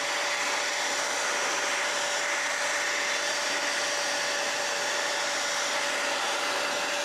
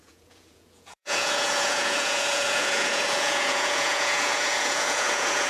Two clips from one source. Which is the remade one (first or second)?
second